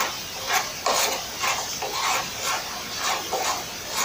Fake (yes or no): no